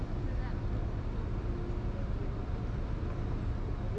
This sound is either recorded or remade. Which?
recorded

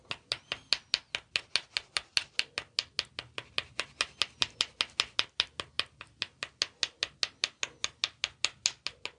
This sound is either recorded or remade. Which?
recorded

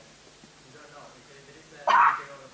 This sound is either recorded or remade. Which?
recorded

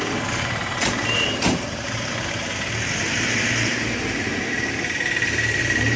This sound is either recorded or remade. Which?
remade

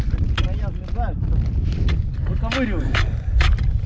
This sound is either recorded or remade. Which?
recorded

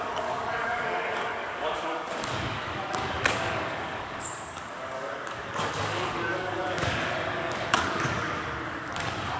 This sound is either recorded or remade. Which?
remade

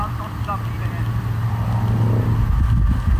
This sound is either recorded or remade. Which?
recorded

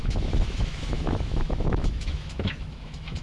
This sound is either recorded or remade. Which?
remade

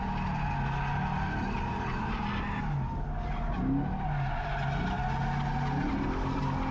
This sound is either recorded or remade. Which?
recorded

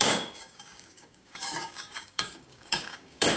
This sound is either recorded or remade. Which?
remade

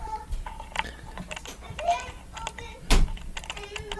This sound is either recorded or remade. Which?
recorded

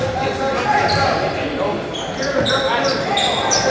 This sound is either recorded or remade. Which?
recorded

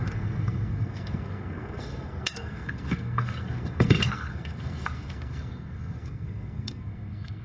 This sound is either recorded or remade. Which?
remade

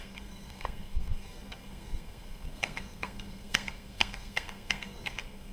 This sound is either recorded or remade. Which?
remade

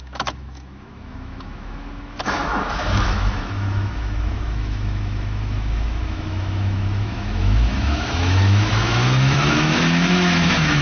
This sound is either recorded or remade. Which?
remade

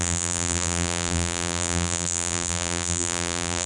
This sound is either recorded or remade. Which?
remade